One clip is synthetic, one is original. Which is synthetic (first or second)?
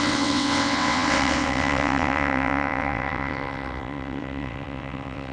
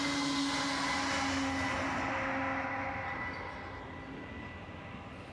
first